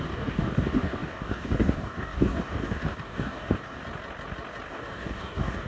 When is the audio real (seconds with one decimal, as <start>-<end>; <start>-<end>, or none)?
3.8-4.7